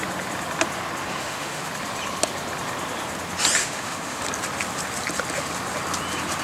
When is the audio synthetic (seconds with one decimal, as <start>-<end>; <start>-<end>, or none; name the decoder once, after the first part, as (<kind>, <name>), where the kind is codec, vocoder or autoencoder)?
1.1-1.7 (autoencoder, DAC-VAE); 3.6-4.2